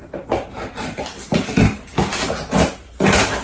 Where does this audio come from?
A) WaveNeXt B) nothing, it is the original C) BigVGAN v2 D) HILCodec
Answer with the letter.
B